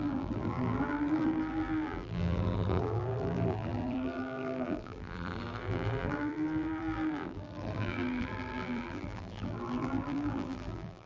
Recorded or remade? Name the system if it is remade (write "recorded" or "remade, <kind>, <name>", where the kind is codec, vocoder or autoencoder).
remade, vocoder, BigVGAN v2